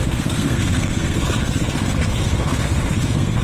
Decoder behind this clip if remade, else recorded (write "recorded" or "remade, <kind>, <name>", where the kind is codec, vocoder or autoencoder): remade, codec, SNAC